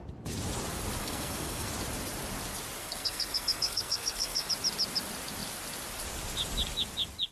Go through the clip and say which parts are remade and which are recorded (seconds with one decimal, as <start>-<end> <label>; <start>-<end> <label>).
0.0-1.0 recorded; 1.0-1.7 remade; 1.7-2.8 recorded; 2.8-4.5 remade; 4.5-7.3 recorded